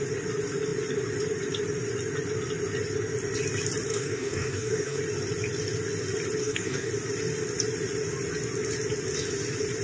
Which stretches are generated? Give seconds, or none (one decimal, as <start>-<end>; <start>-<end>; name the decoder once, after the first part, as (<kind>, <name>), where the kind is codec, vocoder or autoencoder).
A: 3.9-5.0 (codec, DAC); 6.4-6.9